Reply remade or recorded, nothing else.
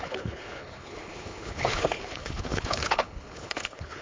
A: remade